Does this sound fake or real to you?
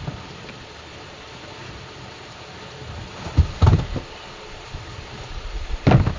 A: real